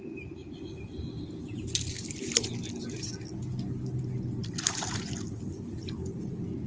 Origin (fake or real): real